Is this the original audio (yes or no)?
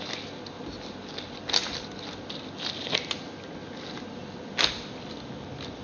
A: yes